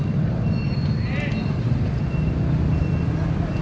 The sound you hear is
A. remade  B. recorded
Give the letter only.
B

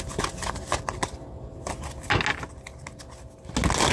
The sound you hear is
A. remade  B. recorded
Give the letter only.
B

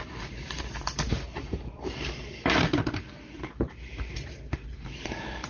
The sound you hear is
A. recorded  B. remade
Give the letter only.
B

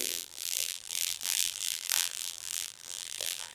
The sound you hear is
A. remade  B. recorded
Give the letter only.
A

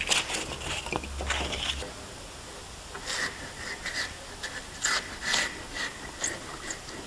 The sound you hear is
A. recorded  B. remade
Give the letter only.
A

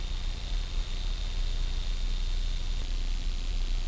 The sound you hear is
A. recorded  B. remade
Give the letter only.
A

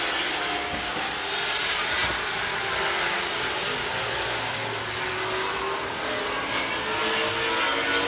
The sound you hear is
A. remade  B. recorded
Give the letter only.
B